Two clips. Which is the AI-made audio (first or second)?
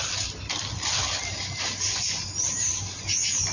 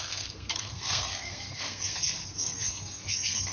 second